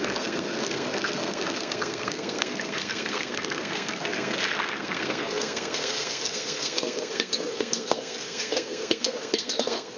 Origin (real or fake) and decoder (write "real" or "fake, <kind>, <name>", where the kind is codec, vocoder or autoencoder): fake, codec, SNAC